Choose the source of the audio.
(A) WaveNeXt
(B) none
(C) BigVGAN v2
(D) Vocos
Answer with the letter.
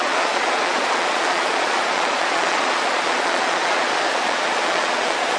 D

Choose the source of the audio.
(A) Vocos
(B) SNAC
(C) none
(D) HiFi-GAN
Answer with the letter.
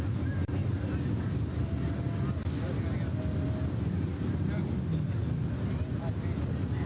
C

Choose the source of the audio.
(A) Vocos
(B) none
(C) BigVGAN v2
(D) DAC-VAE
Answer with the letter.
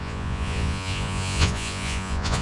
A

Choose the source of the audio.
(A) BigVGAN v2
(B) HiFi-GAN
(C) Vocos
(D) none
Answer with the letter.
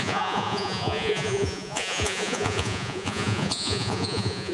C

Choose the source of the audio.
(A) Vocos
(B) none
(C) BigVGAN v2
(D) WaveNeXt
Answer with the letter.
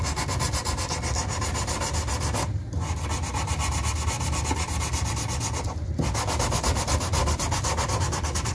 B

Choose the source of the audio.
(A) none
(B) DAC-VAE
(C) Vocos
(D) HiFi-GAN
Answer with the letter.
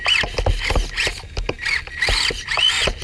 A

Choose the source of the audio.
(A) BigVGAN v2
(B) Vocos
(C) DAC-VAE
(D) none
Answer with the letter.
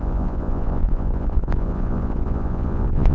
B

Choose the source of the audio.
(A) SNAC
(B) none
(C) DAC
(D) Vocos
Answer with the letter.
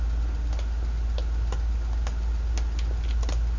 B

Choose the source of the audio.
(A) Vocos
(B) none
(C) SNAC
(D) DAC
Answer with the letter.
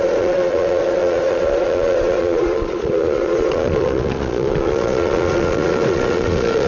A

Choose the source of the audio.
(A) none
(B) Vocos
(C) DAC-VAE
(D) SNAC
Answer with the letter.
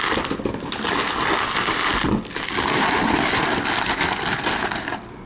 A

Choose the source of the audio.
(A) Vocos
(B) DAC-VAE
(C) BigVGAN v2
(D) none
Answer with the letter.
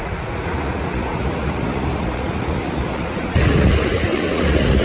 A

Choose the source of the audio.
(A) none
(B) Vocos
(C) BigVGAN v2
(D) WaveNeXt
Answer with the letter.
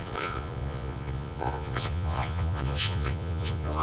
B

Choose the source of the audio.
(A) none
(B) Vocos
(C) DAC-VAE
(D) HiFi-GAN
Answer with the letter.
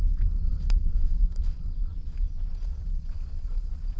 B